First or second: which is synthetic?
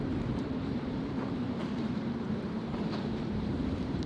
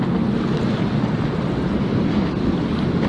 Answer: first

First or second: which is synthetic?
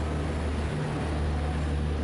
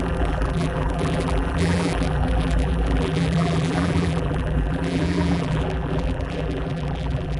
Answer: second